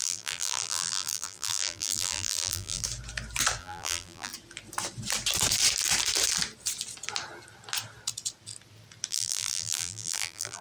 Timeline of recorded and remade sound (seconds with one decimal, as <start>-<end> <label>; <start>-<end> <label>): 0.0-2.8 remade; 2.8-3.6 recorded; 3.6-4.3 remade; 4.3-9.1 recorded; 9.1-10.6 remade